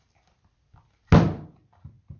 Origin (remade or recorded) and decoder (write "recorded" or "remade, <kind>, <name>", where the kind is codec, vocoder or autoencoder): recorded